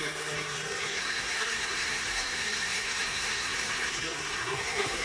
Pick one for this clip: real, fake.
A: fake